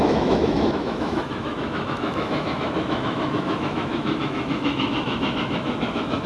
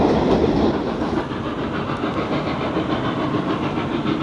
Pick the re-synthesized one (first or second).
first